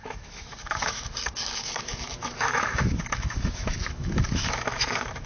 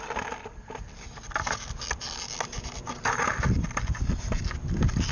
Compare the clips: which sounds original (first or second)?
second